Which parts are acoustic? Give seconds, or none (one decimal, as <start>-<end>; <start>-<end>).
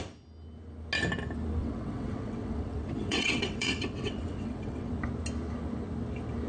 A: 0.0-1.6; 4.9-6.5